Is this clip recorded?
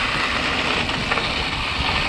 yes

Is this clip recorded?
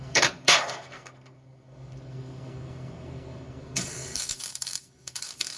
no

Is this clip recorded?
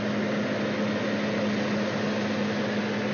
yes